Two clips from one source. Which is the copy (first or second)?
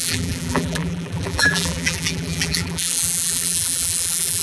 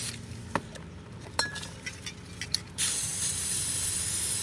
first